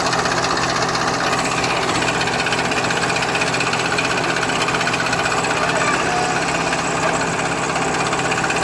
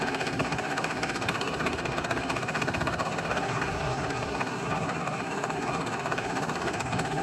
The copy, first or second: second